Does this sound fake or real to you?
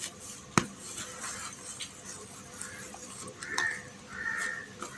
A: real